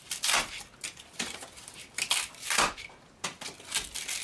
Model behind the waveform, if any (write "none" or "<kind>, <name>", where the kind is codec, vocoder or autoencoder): none